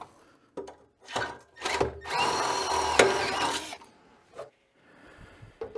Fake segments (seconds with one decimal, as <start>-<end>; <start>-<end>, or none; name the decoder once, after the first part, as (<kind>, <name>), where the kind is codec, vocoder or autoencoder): 3.5-5.8 (vocoder, BigVGAN v2)